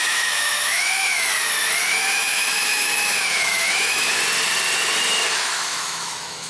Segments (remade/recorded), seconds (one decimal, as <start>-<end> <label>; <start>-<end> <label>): 0.0-1.3 remade; 1.3-1.9 recorded; 1.9-4.1 remade; 4.1-5.3 recorded; 5.3-6.5 remade